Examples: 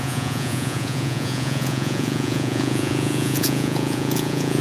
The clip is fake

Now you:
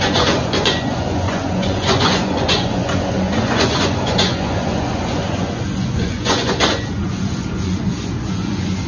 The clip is fake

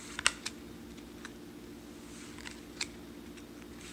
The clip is real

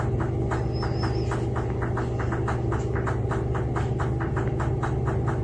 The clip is real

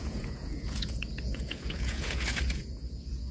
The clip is fake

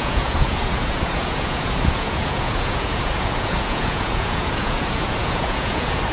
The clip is fake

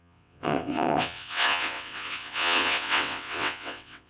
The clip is fake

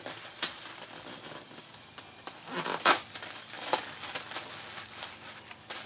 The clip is real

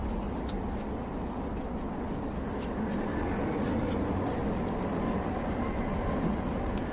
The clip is real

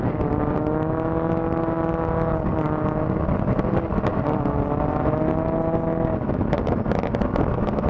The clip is real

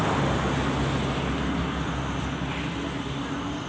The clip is real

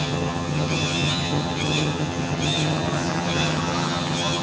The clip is fake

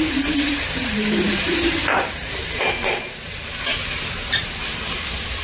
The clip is fake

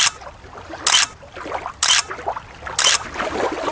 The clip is real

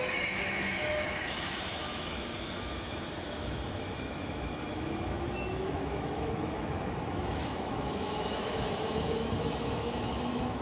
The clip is fake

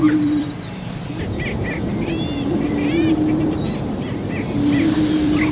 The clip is fake